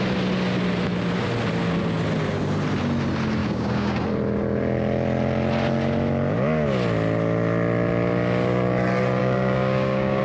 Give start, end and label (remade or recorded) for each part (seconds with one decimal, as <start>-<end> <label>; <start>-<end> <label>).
0.0-3.4 recorded; 3.4-4.0 remade; 4.0-9.2 recorded; 9.2-10.2 remade